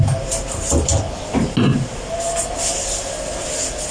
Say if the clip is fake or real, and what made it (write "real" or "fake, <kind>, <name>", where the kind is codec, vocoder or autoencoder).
real